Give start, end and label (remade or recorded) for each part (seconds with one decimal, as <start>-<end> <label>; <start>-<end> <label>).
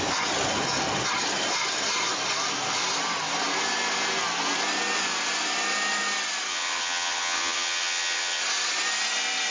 0.0-6.5 recorded; 6.5-8.4 remade; 8.4-9.5 recorded